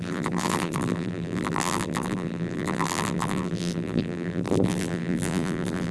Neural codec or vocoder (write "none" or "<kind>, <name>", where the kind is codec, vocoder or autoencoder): vocoder, BigVGAN v2